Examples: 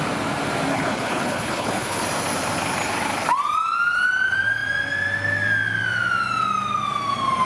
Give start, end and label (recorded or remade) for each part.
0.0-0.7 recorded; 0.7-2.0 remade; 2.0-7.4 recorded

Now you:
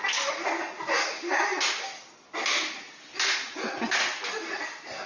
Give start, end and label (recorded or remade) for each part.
0.0-5.1 recorded